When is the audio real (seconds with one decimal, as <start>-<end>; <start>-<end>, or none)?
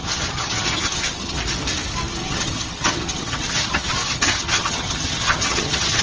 1.4-2.2